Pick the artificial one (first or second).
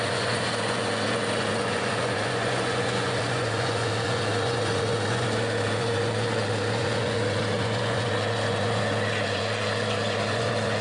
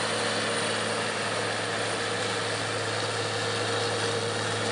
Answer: first